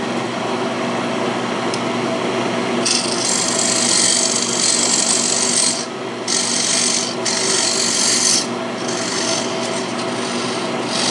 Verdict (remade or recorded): recorded